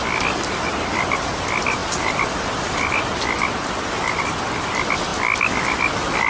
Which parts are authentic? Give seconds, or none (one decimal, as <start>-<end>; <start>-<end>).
0.0-6.3